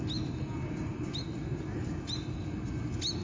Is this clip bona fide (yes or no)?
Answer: yes